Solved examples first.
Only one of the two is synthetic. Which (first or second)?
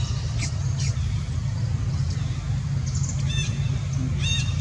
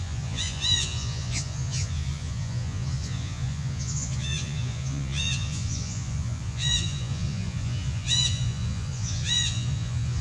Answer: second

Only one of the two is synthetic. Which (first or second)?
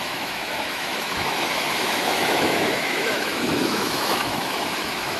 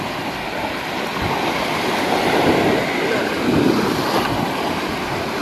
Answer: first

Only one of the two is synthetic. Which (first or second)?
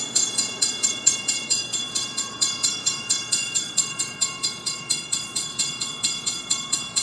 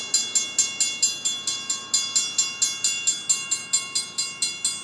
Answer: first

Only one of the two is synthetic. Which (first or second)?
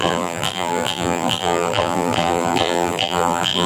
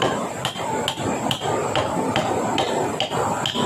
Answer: first